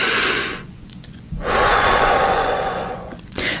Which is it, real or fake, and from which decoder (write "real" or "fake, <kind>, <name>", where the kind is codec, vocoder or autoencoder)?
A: fake, vocoder, Vocos